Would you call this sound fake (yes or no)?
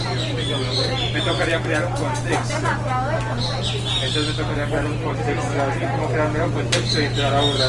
no